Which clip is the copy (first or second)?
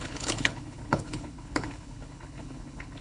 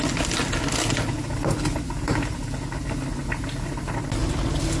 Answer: first